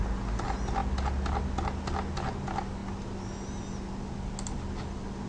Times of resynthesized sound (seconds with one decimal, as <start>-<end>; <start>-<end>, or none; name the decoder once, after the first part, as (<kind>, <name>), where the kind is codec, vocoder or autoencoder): none